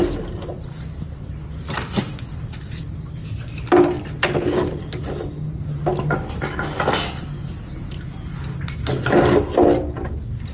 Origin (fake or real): real